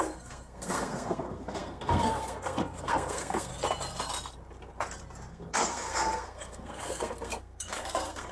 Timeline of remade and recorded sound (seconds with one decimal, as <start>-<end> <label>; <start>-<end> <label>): 0.0-3.5 remade; 3.5-5.3 recorded; 5.3-8.3 remade